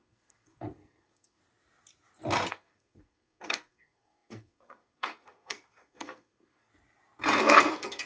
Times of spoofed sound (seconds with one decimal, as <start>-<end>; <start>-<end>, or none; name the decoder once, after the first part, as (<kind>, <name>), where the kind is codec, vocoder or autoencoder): 0.0-1.4 (codec, SNAC); 2.5-6.7; 7.4-8.1

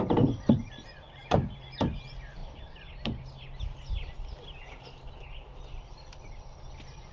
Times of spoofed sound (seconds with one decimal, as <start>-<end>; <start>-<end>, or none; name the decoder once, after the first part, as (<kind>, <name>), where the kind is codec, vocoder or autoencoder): none

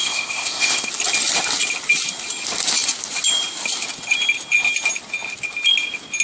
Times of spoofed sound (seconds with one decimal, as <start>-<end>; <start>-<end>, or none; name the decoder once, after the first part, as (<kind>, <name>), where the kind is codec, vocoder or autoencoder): 0.0-0.9 (codec, ZipCodec)

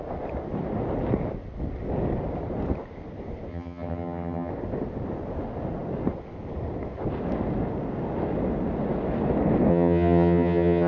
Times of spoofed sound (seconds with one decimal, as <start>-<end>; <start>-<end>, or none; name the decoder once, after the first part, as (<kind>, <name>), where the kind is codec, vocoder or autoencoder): 3.5-4.5 (vocoder, HiFi-GAN); 9.7-10.9

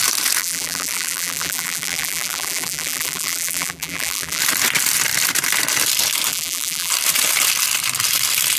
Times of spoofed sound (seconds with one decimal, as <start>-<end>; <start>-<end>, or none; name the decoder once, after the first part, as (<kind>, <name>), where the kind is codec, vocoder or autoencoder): 0.4-4.4 (vocoder, BigVGAN v2); 6.3-6.9

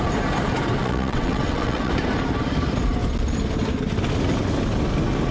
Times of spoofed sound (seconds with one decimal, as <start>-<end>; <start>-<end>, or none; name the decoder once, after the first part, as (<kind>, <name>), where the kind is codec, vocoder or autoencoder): 0.8-1.9 (vocoder, WaveNeXt)

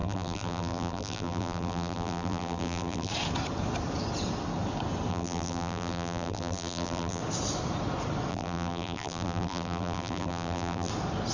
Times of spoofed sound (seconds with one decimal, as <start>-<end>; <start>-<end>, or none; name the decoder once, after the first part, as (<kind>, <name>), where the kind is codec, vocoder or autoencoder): 0.0-3.1 (vocoder, BigVGAN v2); 5.1-7.2; 8.3-10.9

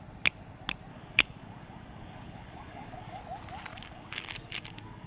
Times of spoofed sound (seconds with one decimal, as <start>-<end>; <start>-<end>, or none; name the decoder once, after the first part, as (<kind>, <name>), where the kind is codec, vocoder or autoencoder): 0.9-3.2 (codec, DAC); 3.7-5.1